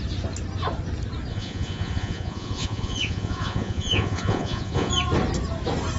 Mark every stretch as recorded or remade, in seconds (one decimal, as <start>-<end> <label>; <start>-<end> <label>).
0.0-1.3 recorded; 1.3-4.9 remade; 4.9-6.0 recorded